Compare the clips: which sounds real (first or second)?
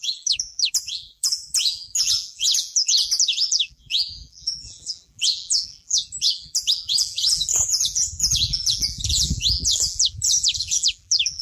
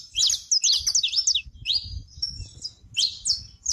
second